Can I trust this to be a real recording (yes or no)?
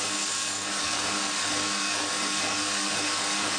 no